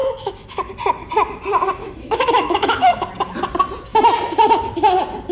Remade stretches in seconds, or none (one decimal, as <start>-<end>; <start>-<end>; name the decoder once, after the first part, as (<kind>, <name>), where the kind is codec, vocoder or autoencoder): 0.0-0.7 (autoencoder, DAC-VAE); 1.8-3.1